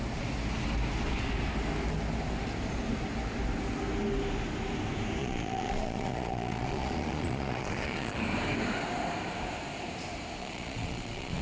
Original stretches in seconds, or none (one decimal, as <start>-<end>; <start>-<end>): 0.0-5.2; 8.2-10.4